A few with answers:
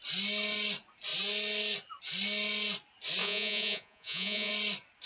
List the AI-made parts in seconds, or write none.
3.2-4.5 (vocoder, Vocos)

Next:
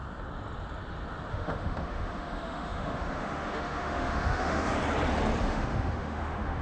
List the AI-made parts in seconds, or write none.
1.3-4.8 (autoencoder, DAC-VAE); 5.4-6.6

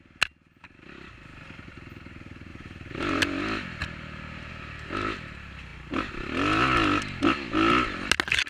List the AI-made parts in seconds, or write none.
2.5-3.2 (vocoder, BigVGAN v2)

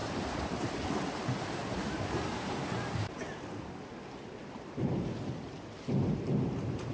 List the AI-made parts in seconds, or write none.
0.0-0.7 (vocoder, BigVGAN v2); 1.6-3.9; 4.4-5.3